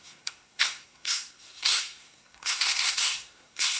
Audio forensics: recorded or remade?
remade